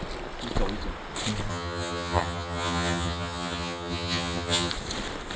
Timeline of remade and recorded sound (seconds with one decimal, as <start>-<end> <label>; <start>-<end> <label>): 0.0-1.5 recorded; 1.5-4.7 remade; 4.7-5.4 recorded